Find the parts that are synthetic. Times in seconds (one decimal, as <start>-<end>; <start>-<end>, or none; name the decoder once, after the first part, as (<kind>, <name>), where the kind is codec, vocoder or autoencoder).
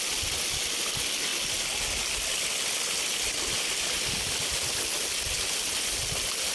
none